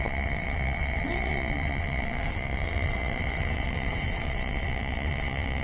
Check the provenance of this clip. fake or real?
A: fake